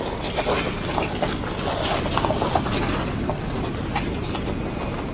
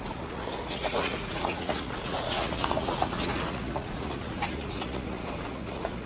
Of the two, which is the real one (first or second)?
first